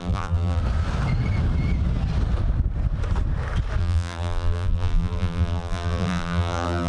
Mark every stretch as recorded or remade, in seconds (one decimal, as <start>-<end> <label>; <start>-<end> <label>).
0.0-0.6 remade; 0.6-3.8 recorded; 3.8-6.9 remade